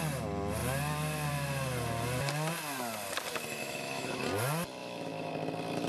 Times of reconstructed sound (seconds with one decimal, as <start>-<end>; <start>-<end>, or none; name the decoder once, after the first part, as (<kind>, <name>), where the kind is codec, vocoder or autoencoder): 3.6-4.2 (autoencoder, DAC-VAE); 4.8-5.3